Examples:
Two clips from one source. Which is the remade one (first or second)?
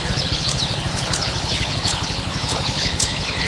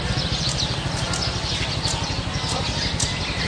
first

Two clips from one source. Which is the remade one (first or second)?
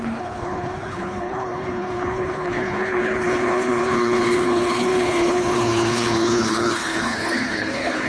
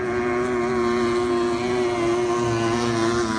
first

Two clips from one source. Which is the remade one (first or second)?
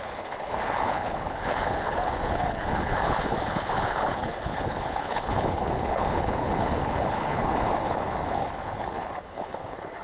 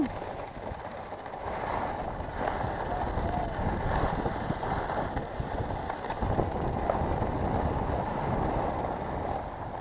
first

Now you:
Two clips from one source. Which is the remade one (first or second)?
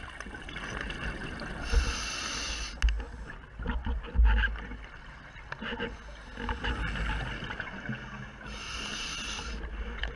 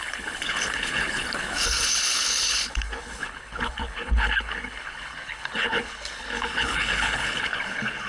second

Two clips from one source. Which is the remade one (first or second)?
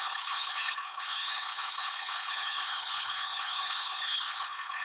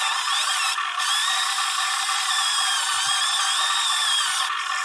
first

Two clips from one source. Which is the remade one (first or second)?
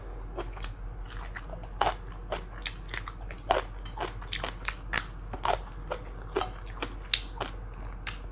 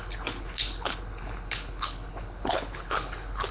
second